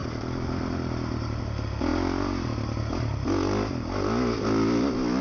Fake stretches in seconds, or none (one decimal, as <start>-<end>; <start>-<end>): none